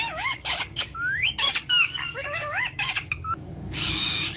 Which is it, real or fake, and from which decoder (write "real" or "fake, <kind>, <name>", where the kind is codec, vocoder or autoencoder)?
fake, codec, DAC